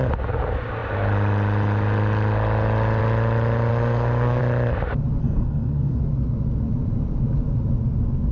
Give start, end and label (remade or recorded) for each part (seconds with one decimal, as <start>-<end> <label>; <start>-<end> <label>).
0.0-3.7 recorded; 3.7-4.4 remade; 4.4-5.2 recorded; 5.2-6.0 remade; 6.0-8.3 recorded